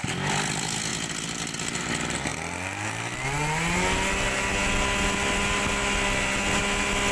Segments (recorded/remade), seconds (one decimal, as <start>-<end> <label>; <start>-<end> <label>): 0.0-7.1 recorded